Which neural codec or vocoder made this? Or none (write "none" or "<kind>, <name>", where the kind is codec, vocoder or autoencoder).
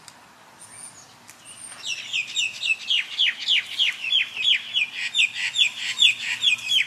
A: none